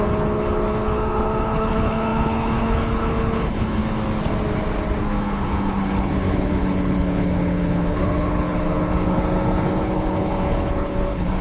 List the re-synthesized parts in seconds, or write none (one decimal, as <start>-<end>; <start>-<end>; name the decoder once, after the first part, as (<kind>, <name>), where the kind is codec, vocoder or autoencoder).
0.0-3.8 (codec, HILCodec); 5.2-11.4